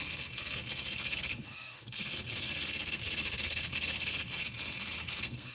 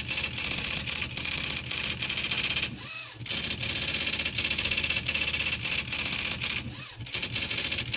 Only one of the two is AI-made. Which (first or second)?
first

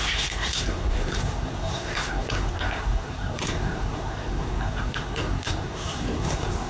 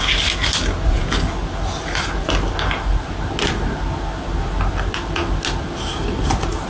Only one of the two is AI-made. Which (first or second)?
first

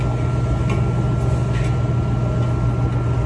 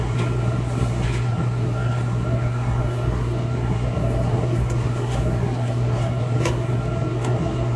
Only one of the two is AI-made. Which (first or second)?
second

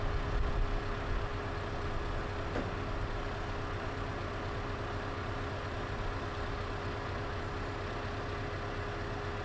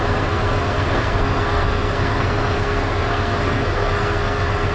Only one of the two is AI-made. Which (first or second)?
second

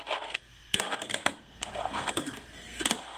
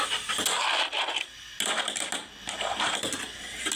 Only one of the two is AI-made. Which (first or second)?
first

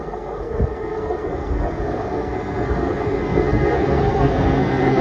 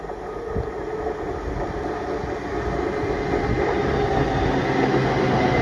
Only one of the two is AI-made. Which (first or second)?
first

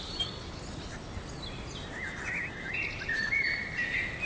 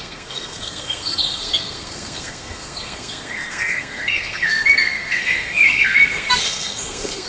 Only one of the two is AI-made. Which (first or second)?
second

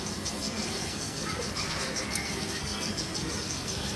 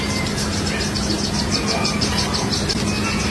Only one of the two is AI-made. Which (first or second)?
first